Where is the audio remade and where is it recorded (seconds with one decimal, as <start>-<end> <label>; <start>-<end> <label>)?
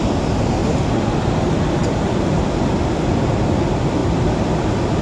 0.0-5.0 recorded